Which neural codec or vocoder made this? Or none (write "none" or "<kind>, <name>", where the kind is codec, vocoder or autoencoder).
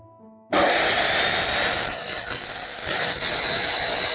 none